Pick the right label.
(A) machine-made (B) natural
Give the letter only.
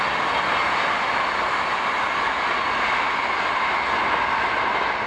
B